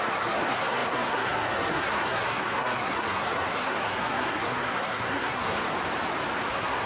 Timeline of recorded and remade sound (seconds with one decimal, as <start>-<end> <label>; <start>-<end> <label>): 0.0-5.6 remade; 5.6-6.5 recorded; 6.5-6.9 remade